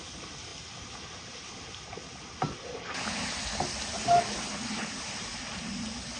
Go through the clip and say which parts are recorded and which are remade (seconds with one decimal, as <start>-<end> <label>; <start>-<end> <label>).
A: 0.0-6.2 recorded